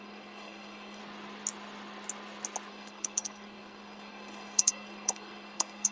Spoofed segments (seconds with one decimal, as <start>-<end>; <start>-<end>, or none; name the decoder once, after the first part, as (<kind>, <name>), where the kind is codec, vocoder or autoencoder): 0.0-1.0 (codec, SNAC); 2.7-5.9